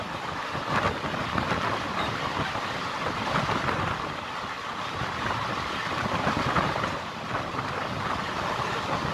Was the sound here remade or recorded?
recorded